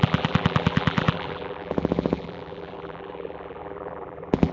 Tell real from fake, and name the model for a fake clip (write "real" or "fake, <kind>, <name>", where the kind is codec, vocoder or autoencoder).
fake, vocoder, BigVGAN v2